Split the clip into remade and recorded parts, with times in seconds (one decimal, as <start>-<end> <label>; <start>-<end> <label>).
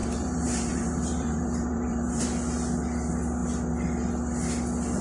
0.0-2.2 remade; 2.2-5.0 recorded